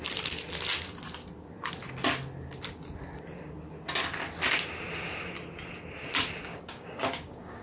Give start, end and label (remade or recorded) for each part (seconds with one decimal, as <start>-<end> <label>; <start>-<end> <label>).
0.0-6.5 recorded; 6.5-7.6 remade